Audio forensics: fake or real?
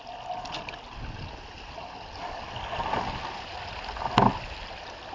real